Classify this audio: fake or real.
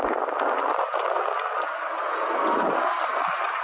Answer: real